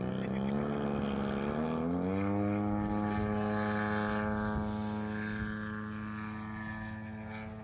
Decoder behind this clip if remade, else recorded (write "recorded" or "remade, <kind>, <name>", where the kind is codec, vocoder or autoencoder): recorded